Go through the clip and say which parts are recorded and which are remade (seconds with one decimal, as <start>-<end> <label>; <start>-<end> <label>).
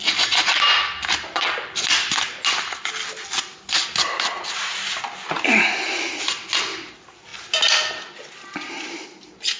0.0-9.6 recorded